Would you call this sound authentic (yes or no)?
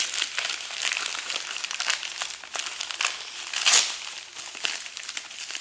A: yes